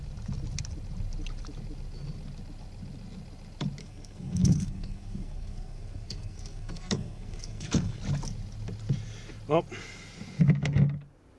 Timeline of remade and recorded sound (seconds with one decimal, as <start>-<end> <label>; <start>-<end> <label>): 0.0-3.8 recorded; 3.8-8.0 remade; 8.0-11.4 recorded